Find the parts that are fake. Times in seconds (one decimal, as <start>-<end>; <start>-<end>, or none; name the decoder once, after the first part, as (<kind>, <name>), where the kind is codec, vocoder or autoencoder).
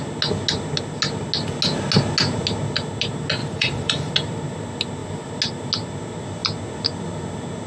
3.4-4.1 (vocoder, BigVGAN v2)